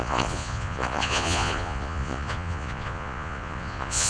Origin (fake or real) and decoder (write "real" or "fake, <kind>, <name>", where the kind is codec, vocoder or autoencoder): fake, vocoder, Vocos